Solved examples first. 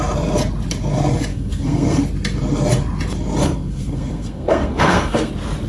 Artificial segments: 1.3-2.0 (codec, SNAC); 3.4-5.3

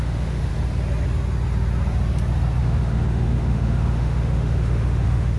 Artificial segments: 0.0-0.5 (autoencoder, DAC-VAE); 2.6-5.4

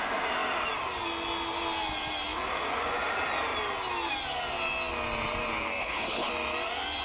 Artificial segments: 5.8-6.3 (codec, HILCodec)

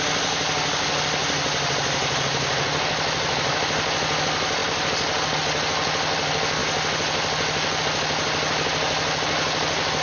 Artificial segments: none